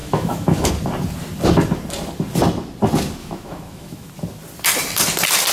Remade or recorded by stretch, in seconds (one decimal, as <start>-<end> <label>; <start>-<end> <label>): 0.0-0.7 remade; 0.7-3.2 recorded; 3.2-4.1 remade; 4.1-5.5 recorded